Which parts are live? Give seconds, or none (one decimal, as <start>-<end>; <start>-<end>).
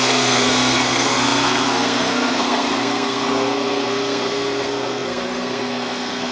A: none